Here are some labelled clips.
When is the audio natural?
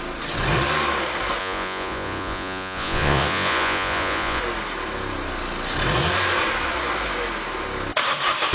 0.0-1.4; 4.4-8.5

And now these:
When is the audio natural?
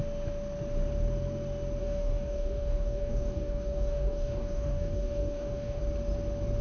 0.0-1.8; 5.8-6.6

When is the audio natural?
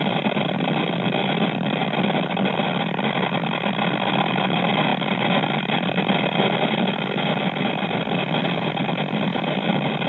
1.8-4.3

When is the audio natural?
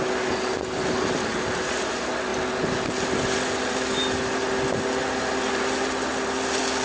0.0-6.8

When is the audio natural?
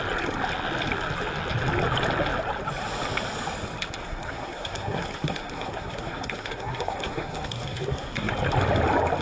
0.0-4.0; 8.3-9.2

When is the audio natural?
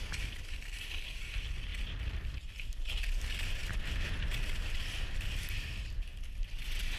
3.6-4.2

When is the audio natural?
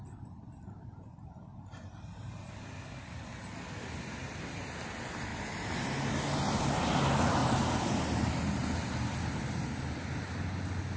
0.0-7.4; 9.8-11.0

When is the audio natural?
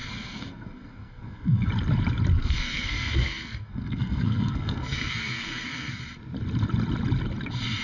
1.7-2.3; 6.0-7.8